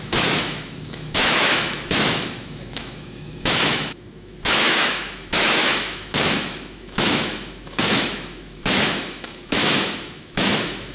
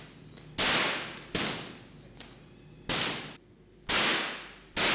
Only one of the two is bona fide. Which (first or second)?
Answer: second